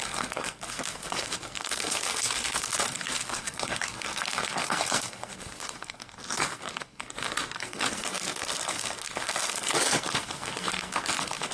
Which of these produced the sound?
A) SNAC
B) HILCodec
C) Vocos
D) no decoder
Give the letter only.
A